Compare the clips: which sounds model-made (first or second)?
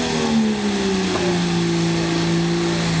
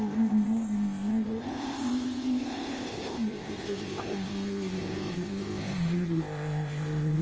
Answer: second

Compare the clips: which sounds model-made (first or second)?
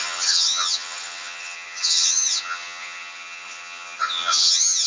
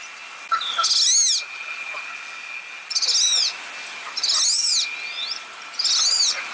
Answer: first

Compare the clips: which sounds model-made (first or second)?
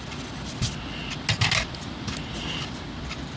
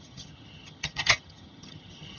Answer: second